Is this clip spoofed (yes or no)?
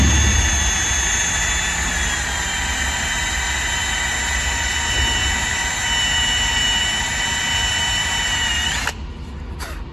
no